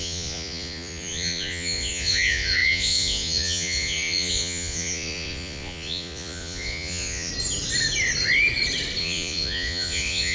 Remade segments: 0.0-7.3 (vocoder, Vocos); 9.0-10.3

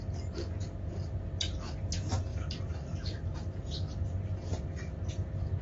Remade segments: none

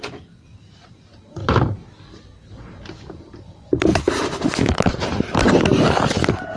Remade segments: 3.9-5.5 (vocoder, BigVGAN v2)